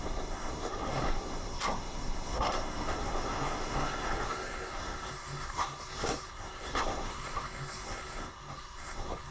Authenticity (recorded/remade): remade